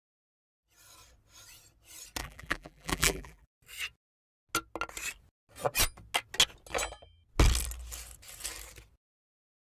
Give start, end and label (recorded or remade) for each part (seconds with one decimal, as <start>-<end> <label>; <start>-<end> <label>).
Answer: 0.0-2.2 recorded; 2.2-3.5 remade; 3.5-9.6 recorded